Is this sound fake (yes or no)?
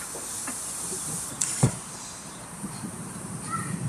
yes